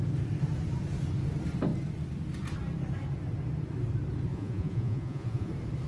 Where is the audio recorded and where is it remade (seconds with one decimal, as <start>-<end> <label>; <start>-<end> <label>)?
0.0-4.3 recorded; 4.3-5.5 remade; 5.5-5.9 recorded